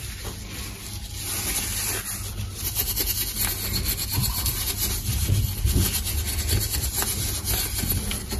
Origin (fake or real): real